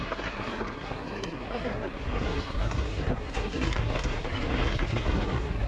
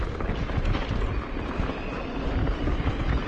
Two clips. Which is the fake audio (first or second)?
first